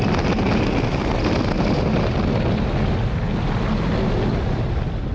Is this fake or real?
real